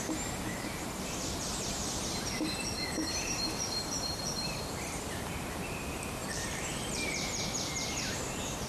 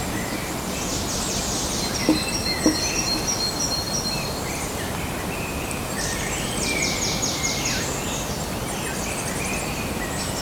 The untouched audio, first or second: second